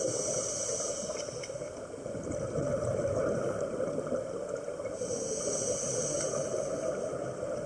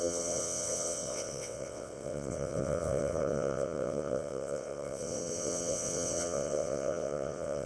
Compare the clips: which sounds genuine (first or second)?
first